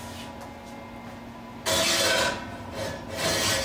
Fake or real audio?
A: real